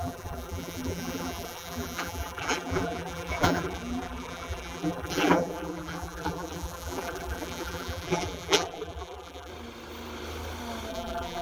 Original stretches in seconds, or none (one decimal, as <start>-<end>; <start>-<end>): 9.5-10.9